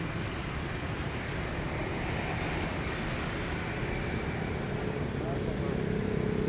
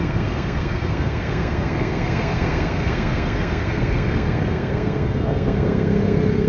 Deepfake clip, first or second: second